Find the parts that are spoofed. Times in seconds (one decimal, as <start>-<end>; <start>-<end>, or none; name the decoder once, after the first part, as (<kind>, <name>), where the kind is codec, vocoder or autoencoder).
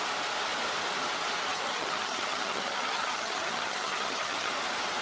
1.5-4.5 (vocoder, HiFi-GAN)